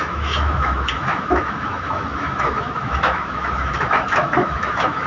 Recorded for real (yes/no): no